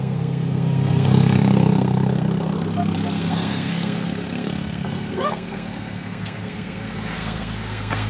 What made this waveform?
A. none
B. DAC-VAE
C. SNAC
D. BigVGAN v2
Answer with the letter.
C